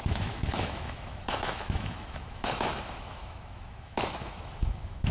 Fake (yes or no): yes